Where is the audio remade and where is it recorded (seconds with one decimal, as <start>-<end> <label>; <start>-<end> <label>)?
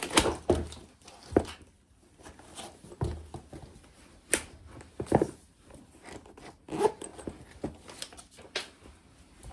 0.0-9.5 recorded